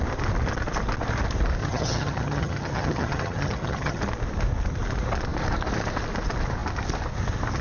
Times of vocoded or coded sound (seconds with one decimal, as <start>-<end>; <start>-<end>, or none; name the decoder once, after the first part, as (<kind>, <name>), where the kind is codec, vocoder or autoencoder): 1.6-4.0 (vocoder, HiFi-GAN)

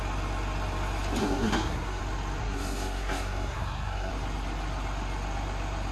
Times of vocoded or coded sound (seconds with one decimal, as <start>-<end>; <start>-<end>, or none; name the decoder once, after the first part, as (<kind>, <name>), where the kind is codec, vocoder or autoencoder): 1.2-2.0 (codec, SNAC); 2.4-4.1